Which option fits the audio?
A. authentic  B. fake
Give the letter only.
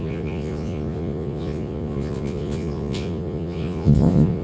B